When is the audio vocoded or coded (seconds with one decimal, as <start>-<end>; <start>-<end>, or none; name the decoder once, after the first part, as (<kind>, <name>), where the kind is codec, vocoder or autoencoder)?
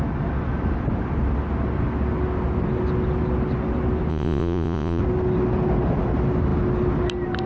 4.1-5.0 (vocoder, Vocos)